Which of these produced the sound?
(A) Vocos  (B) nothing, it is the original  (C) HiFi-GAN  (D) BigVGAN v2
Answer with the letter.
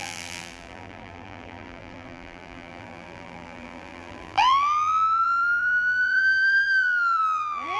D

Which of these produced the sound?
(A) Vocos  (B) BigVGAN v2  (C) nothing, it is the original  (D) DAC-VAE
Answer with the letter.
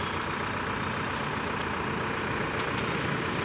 C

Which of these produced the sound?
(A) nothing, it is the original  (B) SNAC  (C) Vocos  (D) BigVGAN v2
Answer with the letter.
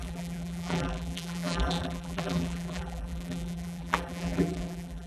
D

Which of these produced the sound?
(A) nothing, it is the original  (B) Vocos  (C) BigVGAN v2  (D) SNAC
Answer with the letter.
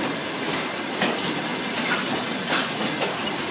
A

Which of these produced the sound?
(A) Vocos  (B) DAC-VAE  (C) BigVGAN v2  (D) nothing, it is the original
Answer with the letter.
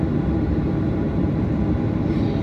D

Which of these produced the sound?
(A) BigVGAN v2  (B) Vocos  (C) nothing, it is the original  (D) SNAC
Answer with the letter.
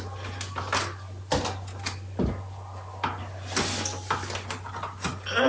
C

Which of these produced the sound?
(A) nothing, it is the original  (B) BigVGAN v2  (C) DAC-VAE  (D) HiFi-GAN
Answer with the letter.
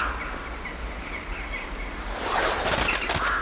A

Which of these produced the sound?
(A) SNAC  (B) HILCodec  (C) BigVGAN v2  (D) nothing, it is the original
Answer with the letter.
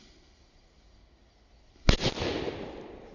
D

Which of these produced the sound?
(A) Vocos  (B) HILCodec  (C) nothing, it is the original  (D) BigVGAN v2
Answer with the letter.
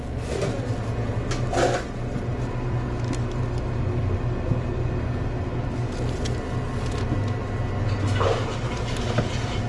C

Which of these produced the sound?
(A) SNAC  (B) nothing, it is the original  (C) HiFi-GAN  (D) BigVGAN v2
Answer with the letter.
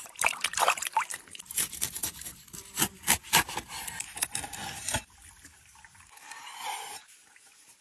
D